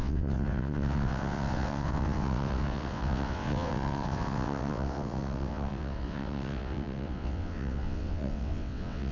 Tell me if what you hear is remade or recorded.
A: remade